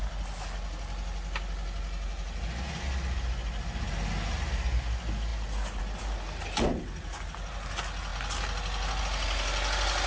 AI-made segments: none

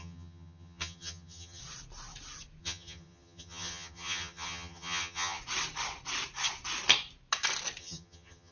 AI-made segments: 0.0-1.6; 2.6-5.4; 7.8-8.5

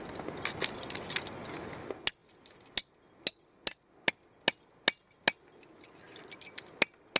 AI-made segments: none